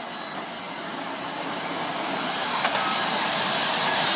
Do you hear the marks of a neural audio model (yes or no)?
no